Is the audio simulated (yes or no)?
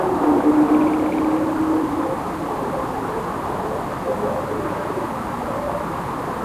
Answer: no